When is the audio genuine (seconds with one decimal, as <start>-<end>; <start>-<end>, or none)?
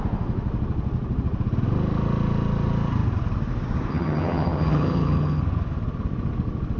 0.0-3.9; 5.4-6.8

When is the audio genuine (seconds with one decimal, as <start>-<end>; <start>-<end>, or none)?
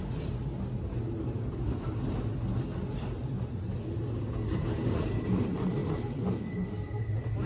0.0-7.5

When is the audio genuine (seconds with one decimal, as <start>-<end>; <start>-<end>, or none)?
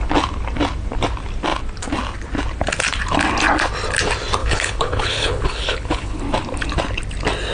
0.0-4.4; 6.2-7.5